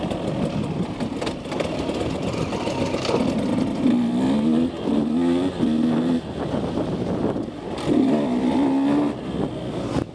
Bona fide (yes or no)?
yes